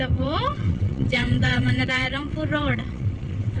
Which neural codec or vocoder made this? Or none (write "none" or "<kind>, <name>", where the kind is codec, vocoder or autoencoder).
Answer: vocoder, WaveNeXt